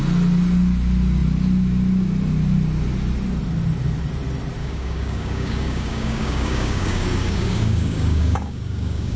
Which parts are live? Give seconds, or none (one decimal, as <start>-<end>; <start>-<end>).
0.0-4.6